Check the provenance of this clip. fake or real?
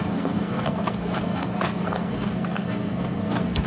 fake